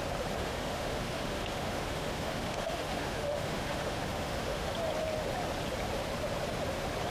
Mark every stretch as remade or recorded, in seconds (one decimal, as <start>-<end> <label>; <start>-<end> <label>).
0.0-0.4 recorded; 0.4-4.7 remade; 4.7-7.1 recorded